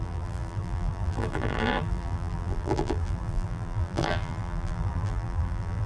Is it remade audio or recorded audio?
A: remade